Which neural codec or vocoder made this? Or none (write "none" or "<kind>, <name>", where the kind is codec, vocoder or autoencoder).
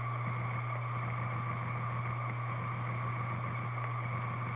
none